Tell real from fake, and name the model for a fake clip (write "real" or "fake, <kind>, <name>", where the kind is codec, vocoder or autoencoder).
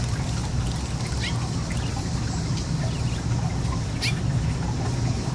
real